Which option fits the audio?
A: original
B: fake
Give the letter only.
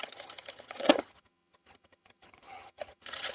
B